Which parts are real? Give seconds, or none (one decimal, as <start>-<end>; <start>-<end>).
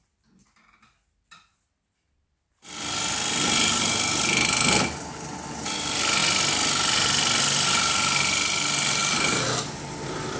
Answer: 0.0-10.4